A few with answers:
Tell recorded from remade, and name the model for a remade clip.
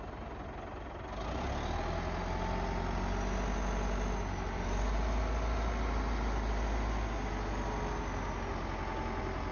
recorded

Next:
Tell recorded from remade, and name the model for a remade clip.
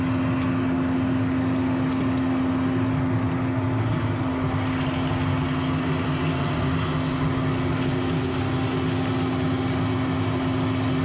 recorded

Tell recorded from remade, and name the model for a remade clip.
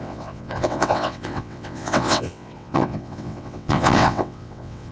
remade, vocoder, WaveNeXt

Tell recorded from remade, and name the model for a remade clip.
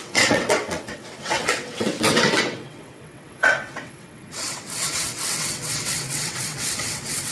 remade, vocoder, WaveNeXt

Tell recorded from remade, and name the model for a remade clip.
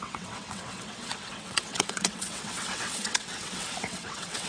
remade, vocoder, WaveNeXt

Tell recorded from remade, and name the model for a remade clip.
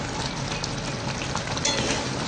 recorded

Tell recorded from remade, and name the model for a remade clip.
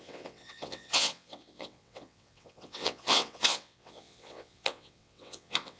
remade, vocoder, WaveNeXt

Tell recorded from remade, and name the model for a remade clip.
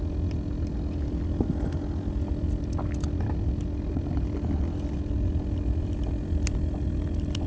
recorded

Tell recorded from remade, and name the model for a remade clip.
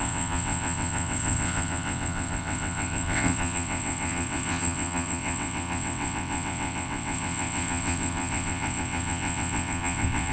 remade, vocoder, WaveNeXt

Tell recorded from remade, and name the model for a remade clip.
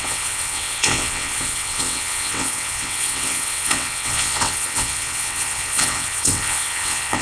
remade, vocoder, WaveNeXt